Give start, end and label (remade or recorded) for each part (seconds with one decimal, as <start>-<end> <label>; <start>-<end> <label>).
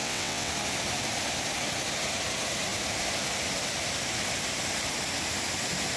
0.0-0.5 remade; 0.5-6.0 recorded